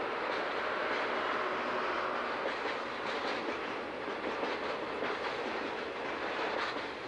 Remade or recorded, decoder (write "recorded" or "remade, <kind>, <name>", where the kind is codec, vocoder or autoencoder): recorded